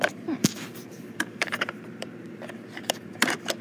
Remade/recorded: remade